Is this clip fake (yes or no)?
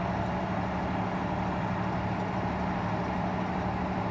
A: no